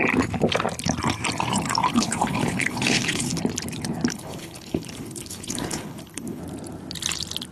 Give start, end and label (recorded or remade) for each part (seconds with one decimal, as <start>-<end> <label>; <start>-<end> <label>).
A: 0.0-1.9 recorded; 1.9-3.4 remade; 3.4-4.1 recorded; 4.1-6.4 remade; 6.4-7.5 recorded